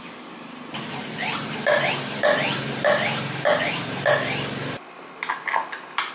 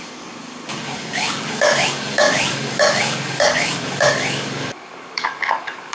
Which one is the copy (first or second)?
second